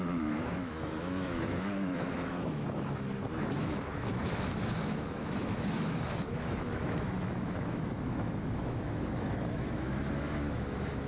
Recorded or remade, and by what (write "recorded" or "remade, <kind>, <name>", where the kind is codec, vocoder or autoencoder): remade, autoencoder, DAC-VAE